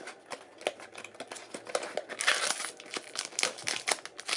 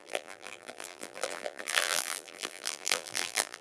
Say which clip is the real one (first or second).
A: first